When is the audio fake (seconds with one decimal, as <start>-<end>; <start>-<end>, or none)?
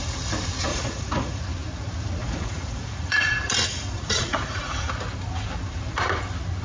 0.7-1.4; 2.2-3.3; 3.7-4.9